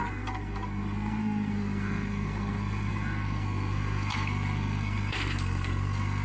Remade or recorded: remade